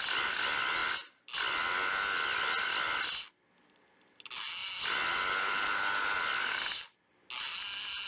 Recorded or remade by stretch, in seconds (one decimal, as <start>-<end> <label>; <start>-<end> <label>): 0.0-8.1 recorded